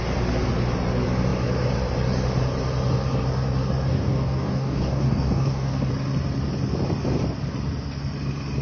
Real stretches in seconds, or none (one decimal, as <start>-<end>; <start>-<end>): 0.0-3.9; 5.9-8.6